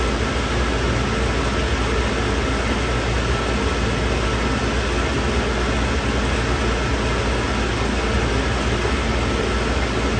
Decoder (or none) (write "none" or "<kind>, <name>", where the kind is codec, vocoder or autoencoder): none